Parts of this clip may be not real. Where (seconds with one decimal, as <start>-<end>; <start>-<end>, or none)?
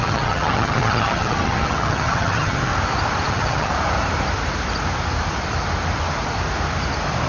0.0-2.7; 3.3-3.7